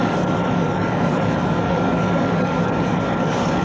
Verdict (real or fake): fake